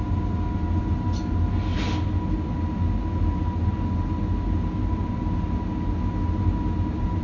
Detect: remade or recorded recorded